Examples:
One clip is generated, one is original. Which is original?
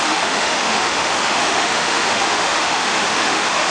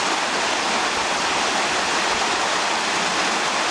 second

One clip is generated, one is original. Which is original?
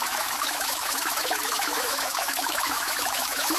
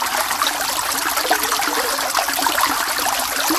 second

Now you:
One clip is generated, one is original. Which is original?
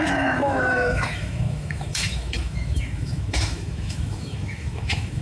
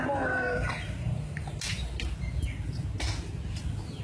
second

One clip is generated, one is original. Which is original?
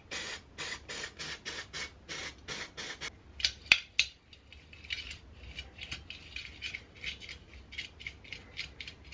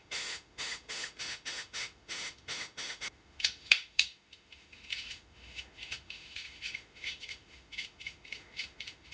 first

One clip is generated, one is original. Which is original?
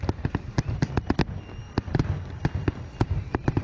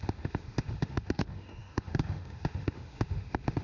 first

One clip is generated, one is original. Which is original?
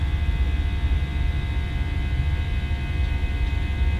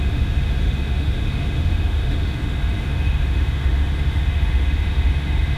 first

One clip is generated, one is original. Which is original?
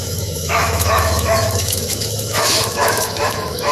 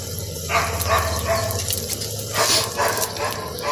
second